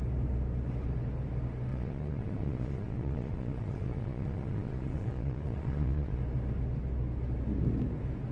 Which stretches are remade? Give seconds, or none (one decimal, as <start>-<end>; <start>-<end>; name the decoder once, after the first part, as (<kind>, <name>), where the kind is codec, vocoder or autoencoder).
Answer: 1.7-6.2 (vocoder, Vocos)